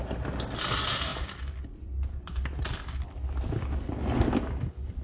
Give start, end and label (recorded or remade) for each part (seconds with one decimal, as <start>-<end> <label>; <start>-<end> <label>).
0.0-5.0 recorded